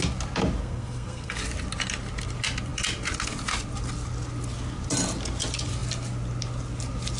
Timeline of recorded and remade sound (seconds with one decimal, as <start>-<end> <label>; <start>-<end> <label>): 0.0-0.6 recorded; 0.6-1.4 remade; 1.4-7.2 recorded